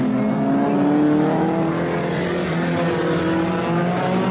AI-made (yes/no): no